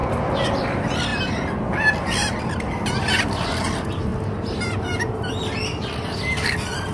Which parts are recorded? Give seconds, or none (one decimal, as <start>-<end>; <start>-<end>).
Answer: 0.0-0.6; 1.1-2.4; 4.1-6.0